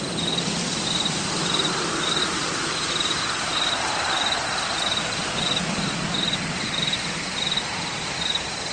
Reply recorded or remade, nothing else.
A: recorded